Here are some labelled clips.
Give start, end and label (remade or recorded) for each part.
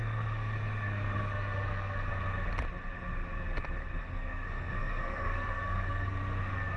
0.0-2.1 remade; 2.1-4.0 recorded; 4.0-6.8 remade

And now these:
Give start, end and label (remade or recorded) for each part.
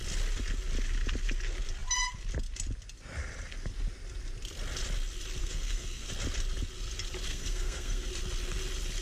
0.0-5.4 recorded; 5.4-6.1 remade; 6.1-7.3 recorded; 7.3-8.1 remade; 8.1-9.0 recorded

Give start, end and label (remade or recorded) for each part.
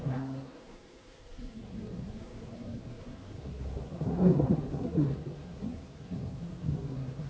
0.0-7.3 remade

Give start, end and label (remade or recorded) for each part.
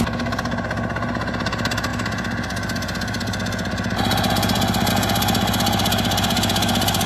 0.0-7.1 recorded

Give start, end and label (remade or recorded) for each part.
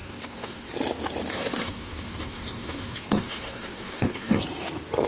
0.0-0.7 remade; 0.7-1.3 recorded; 1.3-4.4 remade; 4.4-5.1 recorded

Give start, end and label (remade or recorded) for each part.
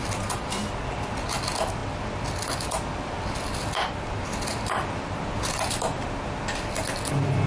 0.0-7.5 recorded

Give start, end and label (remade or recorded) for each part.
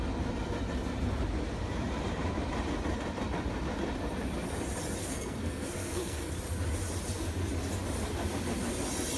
0.0-5.0 recorded; 5.0-6.3 remade; 6.3-9.2 recorded